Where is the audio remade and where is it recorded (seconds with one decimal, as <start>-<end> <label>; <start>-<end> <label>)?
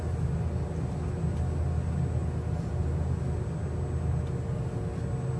0.0-5.4 recorded